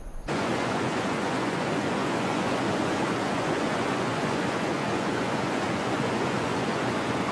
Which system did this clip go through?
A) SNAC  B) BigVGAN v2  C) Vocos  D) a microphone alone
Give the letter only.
C